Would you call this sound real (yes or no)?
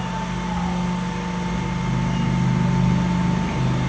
yes